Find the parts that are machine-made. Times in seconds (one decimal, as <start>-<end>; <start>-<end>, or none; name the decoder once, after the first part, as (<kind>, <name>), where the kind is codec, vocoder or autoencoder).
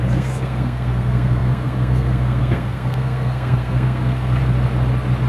0.0-4.4 (codec, SNAC)